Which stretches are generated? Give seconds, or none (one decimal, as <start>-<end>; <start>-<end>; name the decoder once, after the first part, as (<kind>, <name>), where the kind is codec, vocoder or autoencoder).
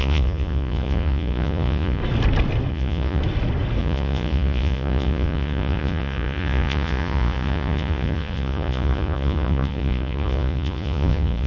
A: 0.0-2.0 (vocoder, Vocos); 2.7-3.2; 3.8-11.5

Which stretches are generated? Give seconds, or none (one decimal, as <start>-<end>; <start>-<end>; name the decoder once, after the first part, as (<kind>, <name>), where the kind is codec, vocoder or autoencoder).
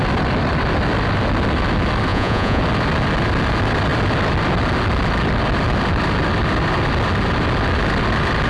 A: 2.1-2.6 (vocoder, Vocos)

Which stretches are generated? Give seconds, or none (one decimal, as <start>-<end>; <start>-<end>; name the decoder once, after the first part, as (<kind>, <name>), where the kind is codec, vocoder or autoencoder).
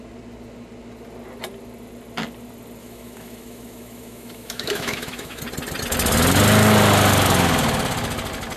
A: 2.8-5.4 (autoencoder, DAC-VAE)